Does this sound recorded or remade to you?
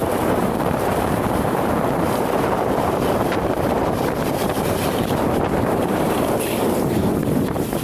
remade